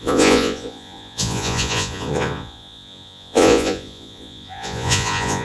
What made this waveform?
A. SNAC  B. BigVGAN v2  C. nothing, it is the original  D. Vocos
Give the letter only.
D